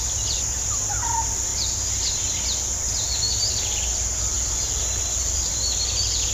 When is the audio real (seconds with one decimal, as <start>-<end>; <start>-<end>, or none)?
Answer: 0.0-6.3